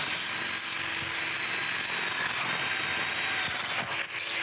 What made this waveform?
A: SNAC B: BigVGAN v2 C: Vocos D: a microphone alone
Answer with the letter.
D